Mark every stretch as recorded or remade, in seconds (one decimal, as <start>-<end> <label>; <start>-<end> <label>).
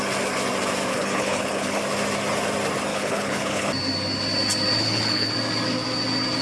0.0-0.9 recorded; 0.9-1.8 remade; 1.8-2.9 recorded; 2.9-3.7 remade; 3.7-4.8 recorded; 4.8-5.3 remade; 5.3-6.4 recorded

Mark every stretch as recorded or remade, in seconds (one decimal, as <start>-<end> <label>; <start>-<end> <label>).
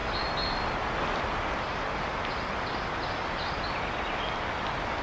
0.0-5.0 recorded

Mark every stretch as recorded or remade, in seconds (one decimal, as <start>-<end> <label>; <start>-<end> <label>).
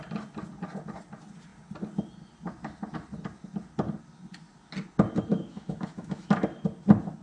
0.0-5.3 recorded; 5.3-6.3 remade; 6.3-7.2 recorded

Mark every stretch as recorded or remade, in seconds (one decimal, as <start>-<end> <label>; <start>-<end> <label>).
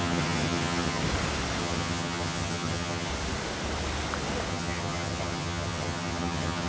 0.0-1.0 remade; 1.0-1.6 recorded; 1.6-3.1 remade; 3.1-4.5 recorded; 4.5-6.7 remade